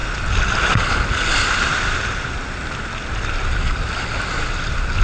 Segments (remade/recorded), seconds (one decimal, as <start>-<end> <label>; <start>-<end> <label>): 0.0-5.0 recorded